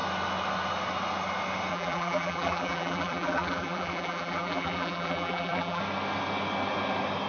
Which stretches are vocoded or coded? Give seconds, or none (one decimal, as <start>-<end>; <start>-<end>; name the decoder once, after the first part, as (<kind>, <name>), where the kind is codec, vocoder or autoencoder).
1.7-5.8 (vocoder, BigVGAN v2)